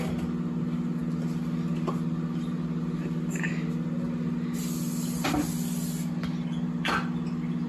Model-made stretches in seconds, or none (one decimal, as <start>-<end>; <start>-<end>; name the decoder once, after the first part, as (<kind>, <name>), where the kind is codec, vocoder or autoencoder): none